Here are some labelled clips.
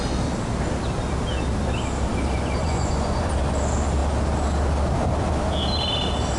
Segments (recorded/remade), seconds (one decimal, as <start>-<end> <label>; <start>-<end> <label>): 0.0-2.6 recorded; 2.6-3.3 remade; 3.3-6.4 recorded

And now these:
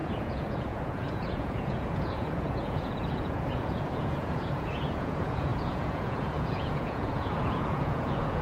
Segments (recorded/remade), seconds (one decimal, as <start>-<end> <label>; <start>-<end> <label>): 0.0-8.4 remade

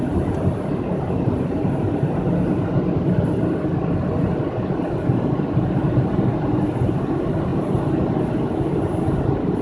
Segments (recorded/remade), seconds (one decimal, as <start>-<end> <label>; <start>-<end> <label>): 0.0-9.6 recorded

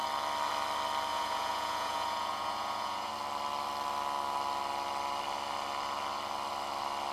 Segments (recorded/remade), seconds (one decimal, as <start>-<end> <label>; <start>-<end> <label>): 0.0-1.1 recorded; 1.1-3.1 remade; 3.1-7.1 recorded

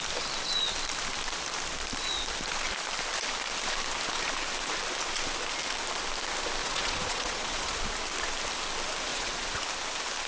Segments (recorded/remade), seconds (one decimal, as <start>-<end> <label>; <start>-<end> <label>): 0.0-6.6 recorded; 6.6-7.8 remade; 7.8-9.1 recorded; 9.1-9.6 remade; 9.6-10.3 recorded